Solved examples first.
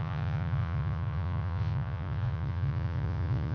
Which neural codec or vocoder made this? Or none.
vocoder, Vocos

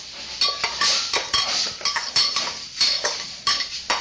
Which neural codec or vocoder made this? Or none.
none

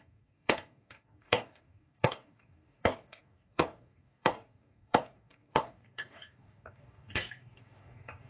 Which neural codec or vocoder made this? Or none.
codec, DAC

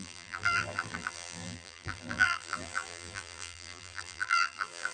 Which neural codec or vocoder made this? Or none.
vocoder, BigVGAN v2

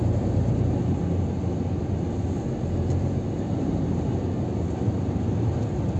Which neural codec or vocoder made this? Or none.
vocoder, BigVGAN v2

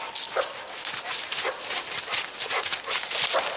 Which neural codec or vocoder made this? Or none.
none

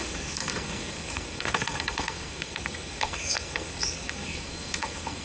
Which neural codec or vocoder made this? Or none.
codec, SNAC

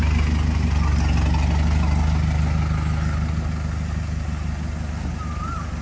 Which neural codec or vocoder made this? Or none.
none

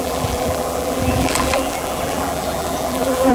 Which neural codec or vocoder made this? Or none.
vocoder, BigVGAN v2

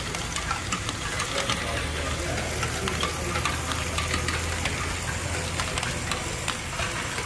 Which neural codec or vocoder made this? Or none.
none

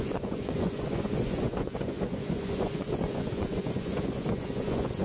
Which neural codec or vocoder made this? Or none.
vocoder, Vocos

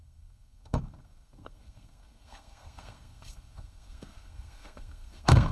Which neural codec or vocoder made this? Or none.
codec, SNAC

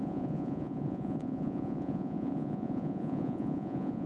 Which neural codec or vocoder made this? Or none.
vocoder, Vocos